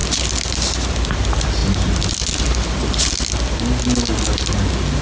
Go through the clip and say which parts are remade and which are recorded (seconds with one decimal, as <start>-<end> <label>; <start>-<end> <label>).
0.0-5.0 recorded